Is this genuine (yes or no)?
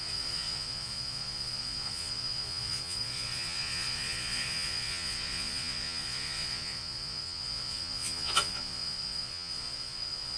no